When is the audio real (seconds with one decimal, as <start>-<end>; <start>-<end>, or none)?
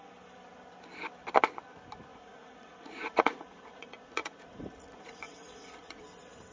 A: 0.0-2.1; 6.0-6.5